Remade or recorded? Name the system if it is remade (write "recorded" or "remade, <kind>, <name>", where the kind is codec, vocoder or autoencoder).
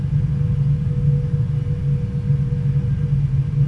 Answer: recorded